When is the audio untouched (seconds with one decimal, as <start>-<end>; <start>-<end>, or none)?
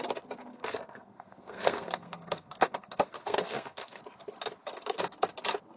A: 0.0-0.5; 4.0-5.8